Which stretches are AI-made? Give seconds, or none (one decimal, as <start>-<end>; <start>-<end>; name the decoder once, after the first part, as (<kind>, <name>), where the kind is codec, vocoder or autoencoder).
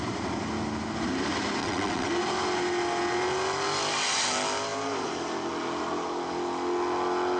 1.6-2.1 (vocoder, WaveNeXt)